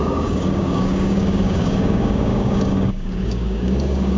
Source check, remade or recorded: remade